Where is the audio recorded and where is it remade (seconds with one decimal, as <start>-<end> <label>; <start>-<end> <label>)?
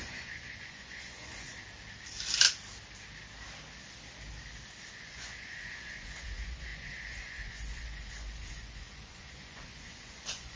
0.0-1.5 remade; 1.5-4.9 recorded; 4.9-10.6 remade